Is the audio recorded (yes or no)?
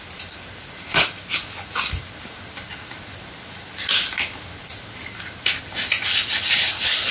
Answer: yes